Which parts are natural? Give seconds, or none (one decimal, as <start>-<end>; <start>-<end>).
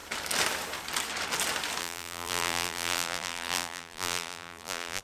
0.0-1.8